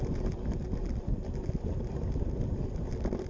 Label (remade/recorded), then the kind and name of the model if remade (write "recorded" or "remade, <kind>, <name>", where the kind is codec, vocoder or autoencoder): recorded